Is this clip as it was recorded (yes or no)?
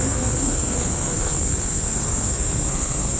no